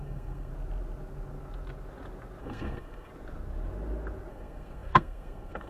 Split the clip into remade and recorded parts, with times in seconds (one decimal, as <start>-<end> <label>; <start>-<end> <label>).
0.0-0.5 remade; 0.5-2.4 recorded; 2.4-3.1 remade; 3.1-4.3 recorded; 4.3-5.7 remade